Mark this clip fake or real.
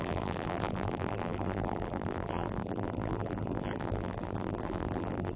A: fake